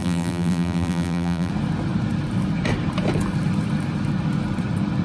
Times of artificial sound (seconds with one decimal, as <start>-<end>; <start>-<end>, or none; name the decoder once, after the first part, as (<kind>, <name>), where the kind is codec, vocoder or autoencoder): 0.0-1.5 (vocoder, BigVGAN v2)